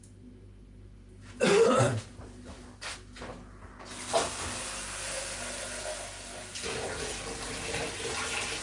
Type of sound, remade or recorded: recorded